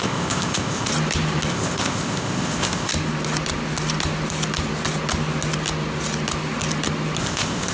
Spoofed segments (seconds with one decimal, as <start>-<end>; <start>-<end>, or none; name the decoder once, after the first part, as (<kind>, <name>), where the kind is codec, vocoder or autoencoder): 0.0-0.9 (codec, ZipCodec); 1.5-2.9; 7.2-7.7